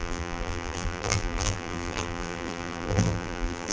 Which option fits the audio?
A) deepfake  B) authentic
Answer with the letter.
A